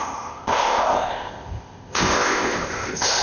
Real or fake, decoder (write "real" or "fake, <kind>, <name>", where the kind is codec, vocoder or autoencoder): fake, codec, ZipCodec